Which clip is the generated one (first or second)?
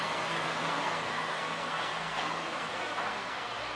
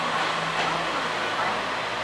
first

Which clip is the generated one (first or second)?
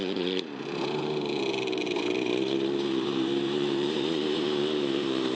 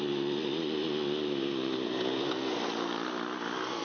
first